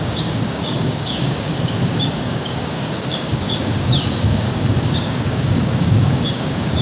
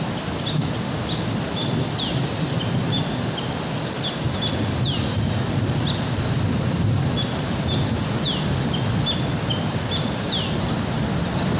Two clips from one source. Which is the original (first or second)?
second